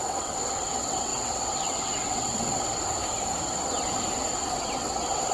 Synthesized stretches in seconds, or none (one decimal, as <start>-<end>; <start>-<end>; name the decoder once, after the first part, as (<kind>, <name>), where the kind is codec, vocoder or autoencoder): 0.0-3.0 (vocoder, WaveNeXt); 4.5-5.3

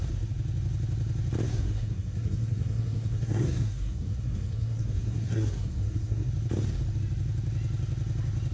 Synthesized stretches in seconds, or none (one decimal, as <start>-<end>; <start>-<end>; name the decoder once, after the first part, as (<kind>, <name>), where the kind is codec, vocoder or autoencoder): 1.5-6.3 (codec, SNAC)